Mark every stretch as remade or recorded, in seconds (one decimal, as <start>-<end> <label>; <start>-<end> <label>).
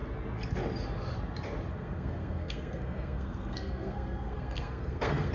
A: 0.0-1.7 recorded; 1.7-5.3 remade